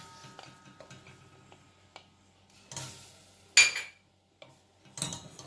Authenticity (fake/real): real